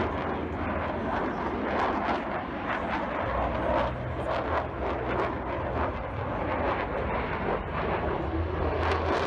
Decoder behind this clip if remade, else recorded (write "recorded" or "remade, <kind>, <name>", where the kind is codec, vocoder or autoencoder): recorded